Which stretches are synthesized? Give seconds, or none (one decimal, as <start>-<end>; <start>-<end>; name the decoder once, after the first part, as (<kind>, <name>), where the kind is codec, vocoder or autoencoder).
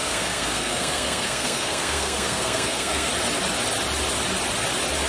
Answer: 0.0-3.1 (codec, SNAC)